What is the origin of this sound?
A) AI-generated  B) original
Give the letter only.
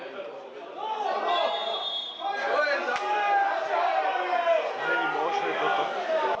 B